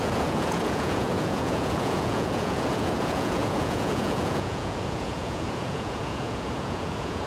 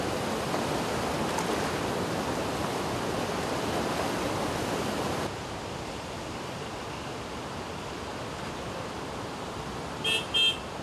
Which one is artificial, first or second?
first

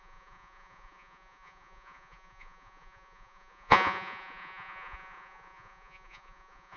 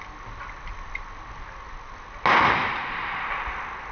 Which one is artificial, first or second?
first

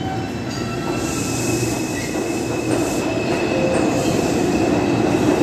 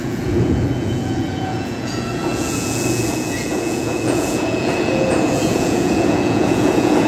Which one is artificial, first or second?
second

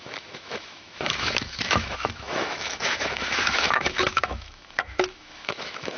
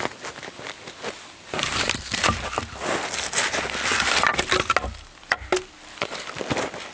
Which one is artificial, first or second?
first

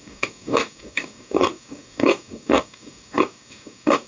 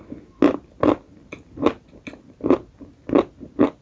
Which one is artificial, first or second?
first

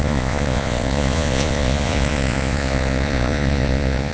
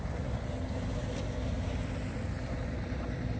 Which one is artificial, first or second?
first